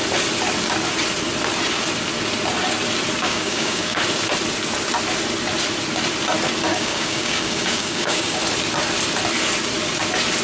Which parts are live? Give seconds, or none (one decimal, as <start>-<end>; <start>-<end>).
0.0-3.2; 4.0-6.7; 8.4-10.4